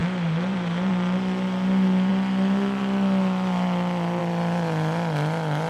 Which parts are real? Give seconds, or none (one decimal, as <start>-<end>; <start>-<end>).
0.9-5.7